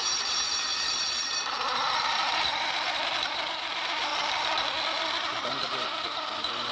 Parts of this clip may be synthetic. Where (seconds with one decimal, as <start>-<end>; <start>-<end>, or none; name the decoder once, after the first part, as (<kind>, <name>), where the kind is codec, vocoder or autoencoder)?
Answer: 0.0-0.7 (vocoder, BigVGAN v2); 2.1-4.1; 5.2-6.7